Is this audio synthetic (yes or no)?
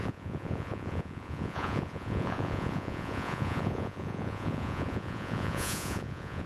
yes